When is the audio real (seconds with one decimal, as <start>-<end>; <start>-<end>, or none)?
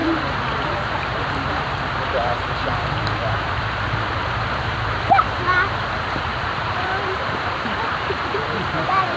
none